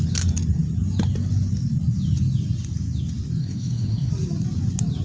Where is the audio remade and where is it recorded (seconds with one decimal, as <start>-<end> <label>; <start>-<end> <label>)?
0.0-3.4 recorded; 3.4-4.1 remade; 4.1-5.0 recorded